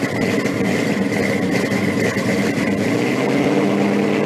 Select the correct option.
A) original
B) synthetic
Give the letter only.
A